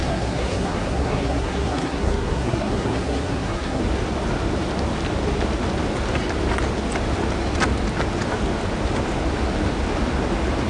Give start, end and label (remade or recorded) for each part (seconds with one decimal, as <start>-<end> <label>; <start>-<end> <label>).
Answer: 0.0-3.8 remade; 3.8-10.7 recorded

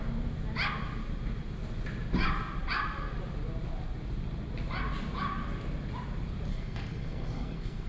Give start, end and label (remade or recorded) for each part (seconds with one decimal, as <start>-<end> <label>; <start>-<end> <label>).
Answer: 0.0-6.5 recorded; 6.5-7.9 remade